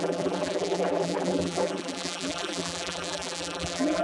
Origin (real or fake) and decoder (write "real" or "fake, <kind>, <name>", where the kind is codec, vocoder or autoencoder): fake, vocoder, BigVGAN v2